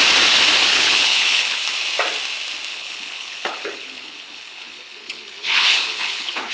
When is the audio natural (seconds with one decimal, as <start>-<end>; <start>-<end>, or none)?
0.0-0.7; 1.6-2.7